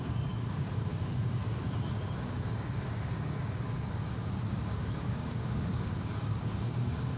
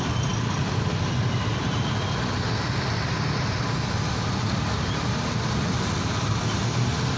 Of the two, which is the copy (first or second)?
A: first